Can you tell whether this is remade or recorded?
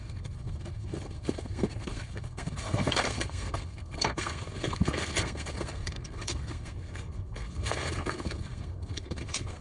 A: remade